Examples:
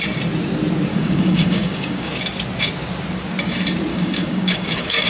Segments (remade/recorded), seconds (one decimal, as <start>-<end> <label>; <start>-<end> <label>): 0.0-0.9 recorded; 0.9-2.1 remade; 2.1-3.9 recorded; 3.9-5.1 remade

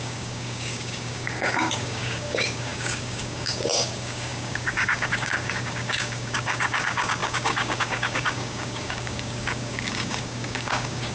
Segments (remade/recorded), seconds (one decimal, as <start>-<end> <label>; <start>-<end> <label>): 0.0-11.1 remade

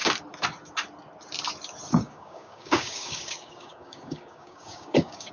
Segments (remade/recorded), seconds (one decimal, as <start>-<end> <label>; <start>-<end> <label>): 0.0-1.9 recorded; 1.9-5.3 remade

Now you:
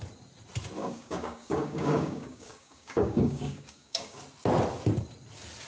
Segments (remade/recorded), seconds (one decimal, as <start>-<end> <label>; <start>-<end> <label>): 0.0-0.8 recorded; 0.8-4.2 remade; 4.2-5.7 recorded

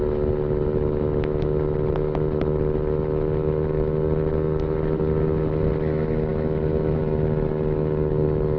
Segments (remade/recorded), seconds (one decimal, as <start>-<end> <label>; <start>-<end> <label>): 0.0-8.6 recorded